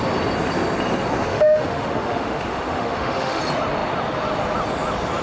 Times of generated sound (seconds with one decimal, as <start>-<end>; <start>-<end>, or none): 1.3-3.4